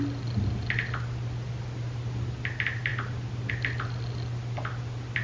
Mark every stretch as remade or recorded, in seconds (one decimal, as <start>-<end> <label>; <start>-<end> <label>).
0.0-5.2 recorded